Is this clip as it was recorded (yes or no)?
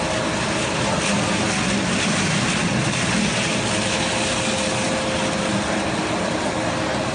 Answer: yes